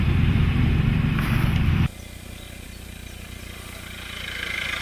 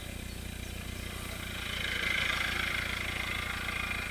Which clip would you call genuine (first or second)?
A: second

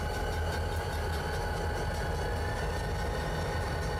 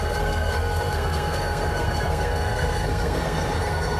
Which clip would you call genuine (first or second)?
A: first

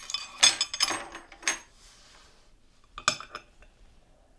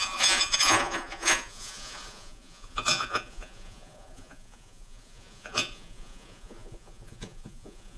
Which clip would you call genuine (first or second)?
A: first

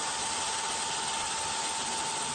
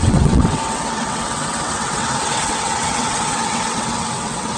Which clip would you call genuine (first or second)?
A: first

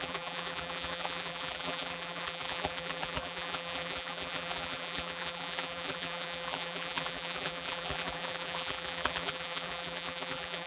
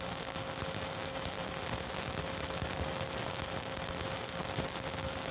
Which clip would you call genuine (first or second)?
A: second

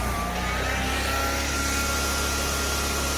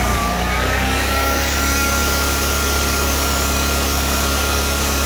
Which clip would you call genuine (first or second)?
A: first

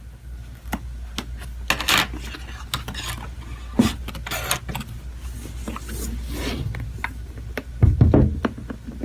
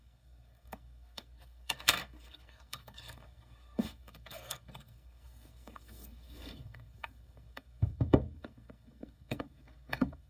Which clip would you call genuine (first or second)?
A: first